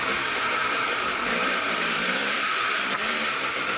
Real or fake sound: fake